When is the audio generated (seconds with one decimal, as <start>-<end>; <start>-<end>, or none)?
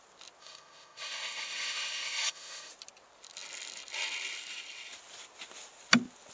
0.4-2.7